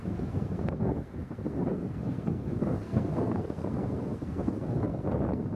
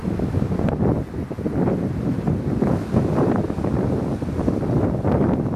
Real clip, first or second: second